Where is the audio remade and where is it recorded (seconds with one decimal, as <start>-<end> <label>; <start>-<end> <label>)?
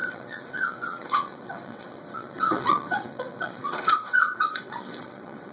0.0-5.5 remade